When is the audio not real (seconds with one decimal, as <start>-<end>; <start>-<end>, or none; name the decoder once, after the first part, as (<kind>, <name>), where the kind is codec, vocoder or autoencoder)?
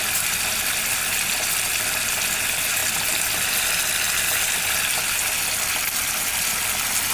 none